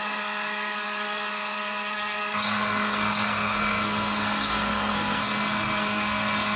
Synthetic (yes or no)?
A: yes